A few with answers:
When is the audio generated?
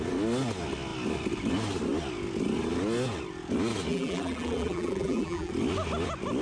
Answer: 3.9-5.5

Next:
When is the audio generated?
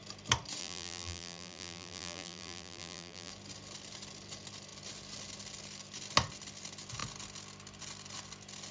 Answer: 0.6-3.3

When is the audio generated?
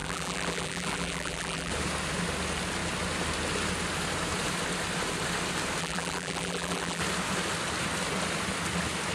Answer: 0.0-1.7; 5.8-7.0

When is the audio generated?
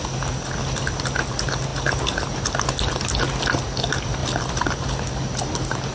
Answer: 4.2-4.8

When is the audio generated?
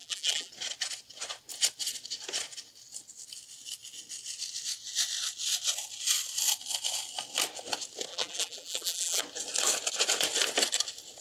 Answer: 0.0-0.5; 8.1-9.2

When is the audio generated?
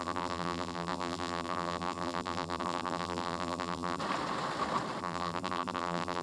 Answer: 0.0-4.0; 5.0-6.2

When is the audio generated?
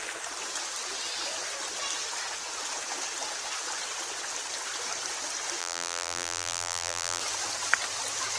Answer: 5.6-7.2